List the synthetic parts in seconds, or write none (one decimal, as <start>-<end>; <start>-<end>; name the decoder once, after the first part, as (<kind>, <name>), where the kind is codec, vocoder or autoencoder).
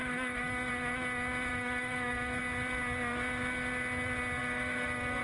0.0-0.7 (autoencoder, DAC-VAE); 1.5-2.4; 4.4-5.2